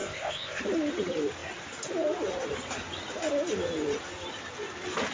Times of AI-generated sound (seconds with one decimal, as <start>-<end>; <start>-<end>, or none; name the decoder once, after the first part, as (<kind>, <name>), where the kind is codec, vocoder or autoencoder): 0.0-0.6 (codec, ZipCodec)